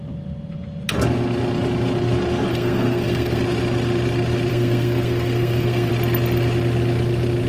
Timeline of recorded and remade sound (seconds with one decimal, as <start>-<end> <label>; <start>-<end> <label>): 0.0-2.5 recorded; 2.5-3.4 remade; 3.4-4.5 recorded; 4.5-5.9 remade; 5.9-7.5 recorded